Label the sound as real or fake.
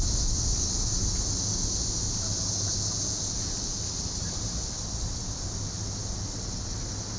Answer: real